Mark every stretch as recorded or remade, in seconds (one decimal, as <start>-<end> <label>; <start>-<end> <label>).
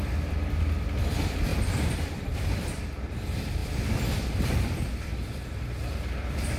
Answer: 0.0-1.5 recorded; 1.5-3.1 remade; 3.1-3.6 recorded; 3.6-6.6 remade